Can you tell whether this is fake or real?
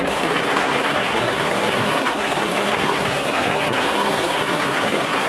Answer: fake